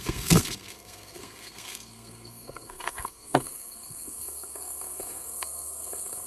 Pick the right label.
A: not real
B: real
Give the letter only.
A